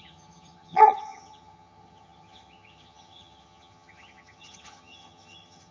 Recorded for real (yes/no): no